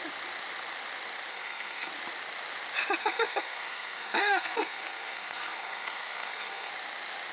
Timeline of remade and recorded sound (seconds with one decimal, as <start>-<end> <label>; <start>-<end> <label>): 0.0-1.3 recorded; 1.3-1.9 remade; 1.9-3.0 recorded; 3.0-6.7 remade; 6.7-7.3 recorded